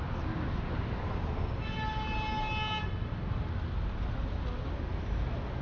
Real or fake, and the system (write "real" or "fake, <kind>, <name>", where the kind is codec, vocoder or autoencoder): real